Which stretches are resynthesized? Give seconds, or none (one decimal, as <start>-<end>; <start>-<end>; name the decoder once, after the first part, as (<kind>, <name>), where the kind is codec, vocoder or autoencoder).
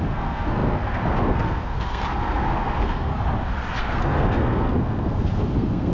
0.0-3.1 (codec, SNAC); 3.8-5.9